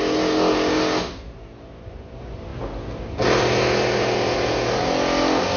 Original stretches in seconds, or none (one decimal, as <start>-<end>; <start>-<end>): 0.0-5.6